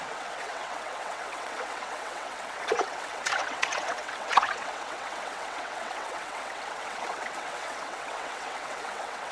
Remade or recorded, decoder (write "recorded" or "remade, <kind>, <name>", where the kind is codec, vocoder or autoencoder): remade, vocoder, WaveNeXt